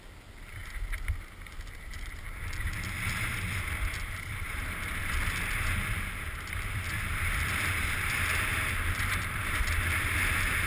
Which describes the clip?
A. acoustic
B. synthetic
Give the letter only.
A